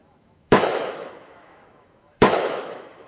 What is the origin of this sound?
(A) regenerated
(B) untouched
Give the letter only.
A